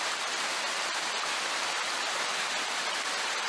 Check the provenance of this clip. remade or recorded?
recorded